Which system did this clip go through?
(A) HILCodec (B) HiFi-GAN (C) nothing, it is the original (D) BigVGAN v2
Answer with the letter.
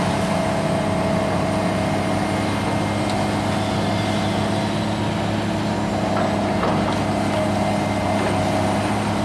C